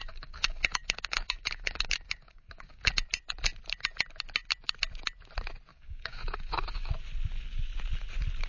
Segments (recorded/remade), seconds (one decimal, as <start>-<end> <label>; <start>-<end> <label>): 0.0-2.9 remade; 2.9-5.7 recorded; 5.7-6.9 remade; 6.9-8.5 recorded